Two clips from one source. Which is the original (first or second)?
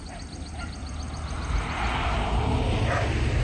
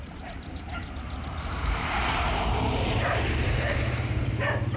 first